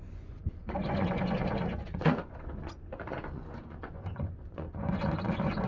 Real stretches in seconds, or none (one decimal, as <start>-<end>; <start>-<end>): none